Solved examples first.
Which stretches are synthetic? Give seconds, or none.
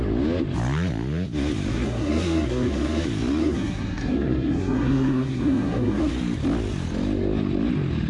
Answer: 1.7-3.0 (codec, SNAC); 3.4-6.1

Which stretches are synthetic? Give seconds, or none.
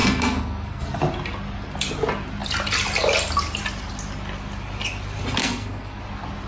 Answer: 0.0-1.0 (codec, SNAC); 5.4-6.0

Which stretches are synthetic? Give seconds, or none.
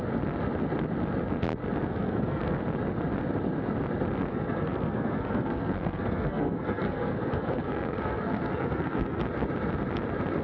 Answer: 1.9-2.6 (codec, SNAC); 4.3-9.2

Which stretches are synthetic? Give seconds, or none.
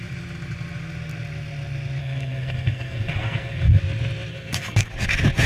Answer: 2.0-3.8 (codec, SNAC); 4.3-4.9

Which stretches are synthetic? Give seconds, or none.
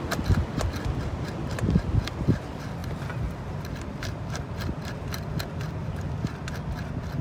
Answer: none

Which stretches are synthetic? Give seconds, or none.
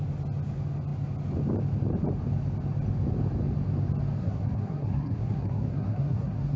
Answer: 4.2-6.6 (codec, SNAC)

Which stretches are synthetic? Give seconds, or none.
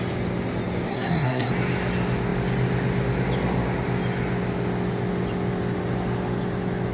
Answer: 0.9-1.5 (codec, SNAC)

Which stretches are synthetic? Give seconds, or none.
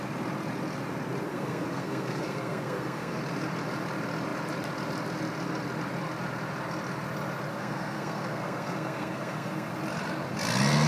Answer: 1.3-3.2 (codec, SNAC); 7.5-9.7